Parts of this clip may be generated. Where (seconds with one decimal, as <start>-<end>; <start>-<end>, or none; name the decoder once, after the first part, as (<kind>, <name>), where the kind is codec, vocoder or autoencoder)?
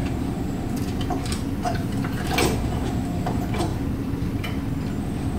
0.0-3.2 (vocoder, BigVGAN v2); 3.7-4.6